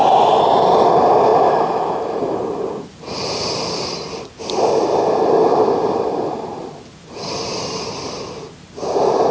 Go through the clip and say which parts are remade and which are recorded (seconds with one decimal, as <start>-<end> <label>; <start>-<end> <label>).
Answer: 0.0-9.3 recorded